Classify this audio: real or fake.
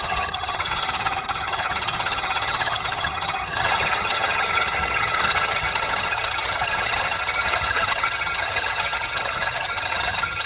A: fake